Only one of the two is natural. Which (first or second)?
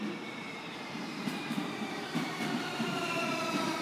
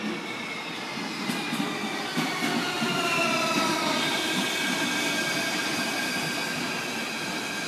second